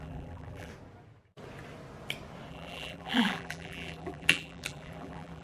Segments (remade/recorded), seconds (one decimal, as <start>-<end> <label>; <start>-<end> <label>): 0.0-0.7 remade; 0.7-2.5 recorded; 2.5-5.4 remade